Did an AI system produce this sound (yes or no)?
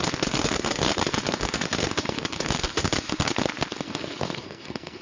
yes